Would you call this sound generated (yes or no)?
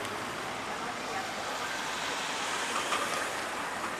no